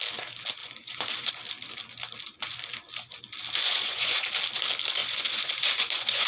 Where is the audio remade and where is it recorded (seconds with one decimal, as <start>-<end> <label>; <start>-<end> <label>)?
0.0-0.6 recorded; 0.6-1.3 remade; 1.3-3.6 recorded; 3.6-4.3 remade; 4.3-5.0 recorded; 5.0-6.3 remade